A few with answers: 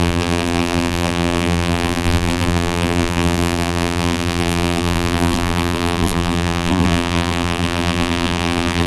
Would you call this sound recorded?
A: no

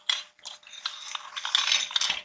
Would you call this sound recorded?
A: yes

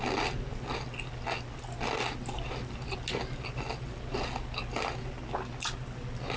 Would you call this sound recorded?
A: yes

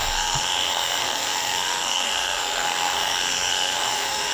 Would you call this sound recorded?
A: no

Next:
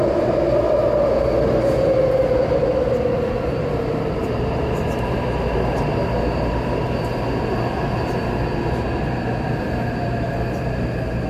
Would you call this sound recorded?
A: yes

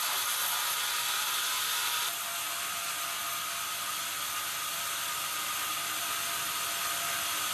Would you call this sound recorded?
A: yes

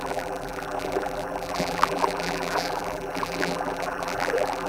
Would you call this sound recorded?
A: no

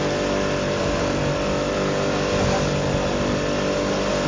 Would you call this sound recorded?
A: yes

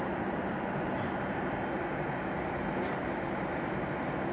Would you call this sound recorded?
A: yes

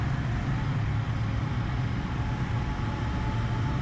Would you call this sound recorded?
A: yes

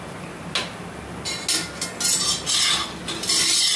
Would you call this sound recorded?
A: yes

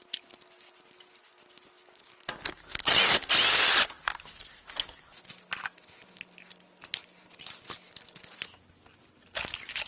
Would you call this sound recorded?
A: yes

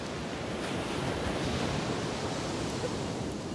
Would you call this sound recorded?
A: yes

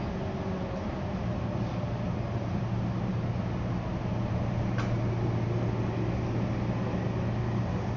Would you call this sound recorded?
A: yes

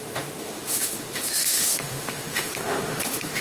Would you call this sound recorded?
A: no